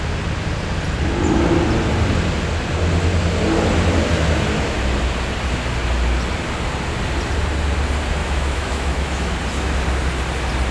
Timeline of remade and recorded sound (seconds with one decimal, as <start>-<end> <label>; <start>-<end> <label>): 0.0-8.2 recorded; 8.2-9.3 remade; 9.3-10.7 recorded